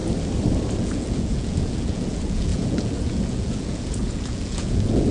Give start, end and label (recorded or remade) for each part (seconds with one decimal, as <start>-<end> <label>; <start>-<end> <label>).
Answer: 0.0-0.8 recorded; 0.8-5.1 remade